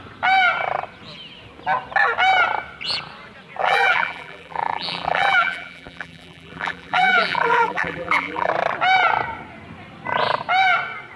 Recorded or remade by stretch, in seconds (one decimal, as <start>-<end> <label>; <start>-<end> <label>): 0.0-3.6 recorded; 3.6-8.5 remade; 8.5-11.2 recorded